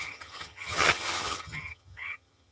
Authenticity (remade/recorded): remade